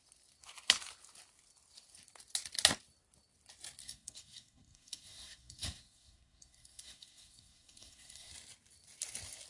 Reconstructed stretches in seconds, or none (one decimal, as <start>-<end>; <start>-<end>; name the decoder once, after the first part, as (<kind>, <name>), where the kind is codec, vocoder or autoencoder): 3.8-8.3 (codec, SNAC)